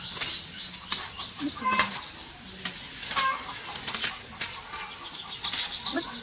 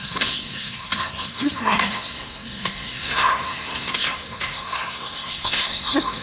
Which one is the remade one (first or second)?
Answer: second